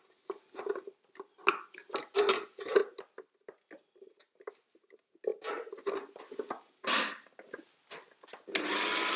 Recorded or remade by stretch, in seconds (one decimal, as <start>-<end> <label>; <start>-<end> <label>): 0.0-9.2 recorded